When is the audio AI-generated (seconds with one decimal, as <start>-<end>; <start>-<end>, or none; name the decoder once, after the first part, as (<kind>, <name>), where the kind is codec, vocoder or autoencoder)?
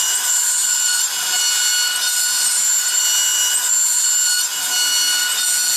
none